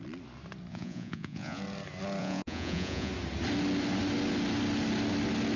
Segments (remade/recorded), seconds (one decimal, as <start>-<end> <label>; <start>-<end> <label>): 0.0-0.7 recorded; 0.7-1.6 remade; 1.6-2.2 recorded; 2.2-3.1 remade; 3.1-5.6 recorded